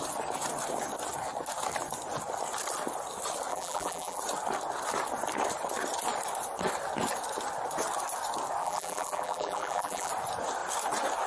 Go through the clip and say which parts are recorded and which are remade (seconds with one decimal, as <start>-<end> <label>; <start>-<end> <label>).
0.0-3.5 recorded; 3.5-4.2 remade; 4.2-8.6 recorded; 8.6-10.1 remade; 10.1-11.3 recorded